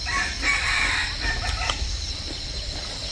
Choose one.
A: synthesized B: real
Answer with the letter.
B